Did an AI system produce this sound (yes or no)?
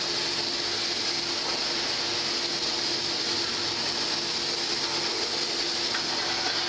no